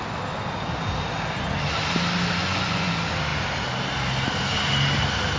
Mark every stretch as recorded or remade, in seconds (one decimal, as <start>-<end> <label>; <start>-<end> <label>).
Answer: 0.0-2.4 recorded; 2.4-2.9 remade; 2.9-5.4 recorded